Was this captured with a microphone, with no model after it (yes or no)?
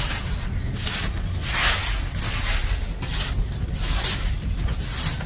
yes